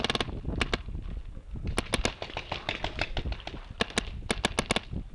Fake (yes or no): no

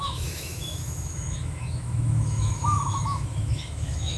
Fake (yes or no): yes